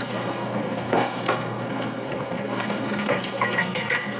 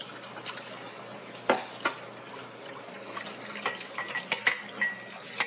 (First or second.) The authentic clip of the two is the second